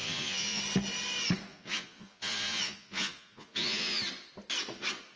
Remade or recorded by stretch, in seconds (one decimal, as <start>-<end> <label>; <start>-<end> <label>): 0.0-0.6 remade; 0.6-1.5 recorded; 1.5-4.0 remade; 4.0-5.2 recorded